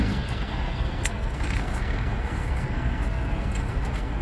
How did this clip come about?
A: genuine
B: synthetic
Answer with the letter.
B